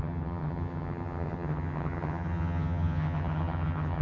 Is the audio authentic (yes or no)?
no